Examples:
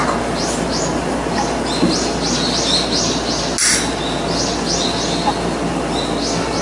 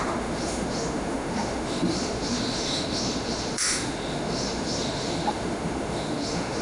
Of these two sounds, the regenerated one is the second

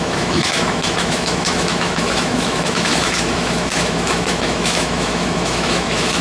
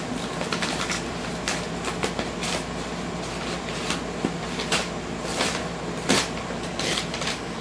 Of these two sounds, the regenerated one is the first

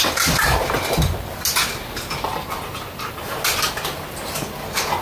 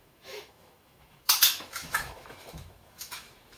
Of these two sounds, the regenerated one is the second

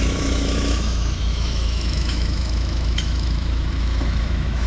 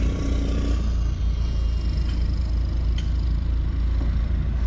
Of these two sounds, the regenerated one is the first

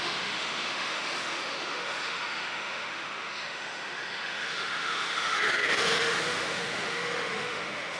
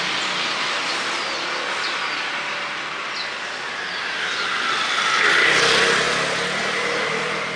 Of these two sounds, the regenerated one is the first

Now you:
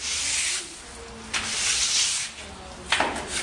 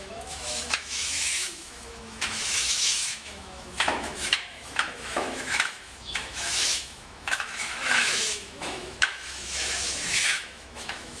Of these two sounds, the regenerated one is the second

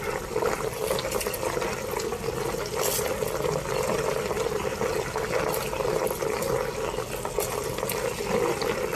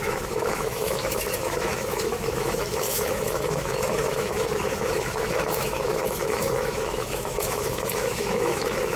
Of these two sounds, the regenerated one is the second